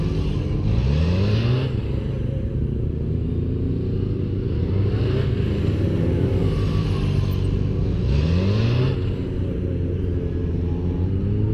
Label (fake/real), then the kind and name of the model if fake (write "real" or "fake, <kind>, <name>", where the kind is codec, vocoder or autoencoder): real